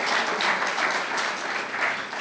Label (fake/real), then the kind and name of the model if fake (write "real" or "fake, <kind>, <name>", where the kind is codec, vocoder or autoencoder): real